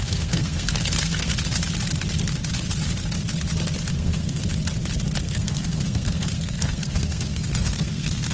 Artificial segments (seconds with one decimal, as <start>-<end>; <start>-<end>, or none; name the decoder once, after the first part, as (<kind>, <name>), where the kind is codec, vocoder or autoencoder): 0.0-1.3 (codec, SNAC); 3.9-4.4; 5.2-8.3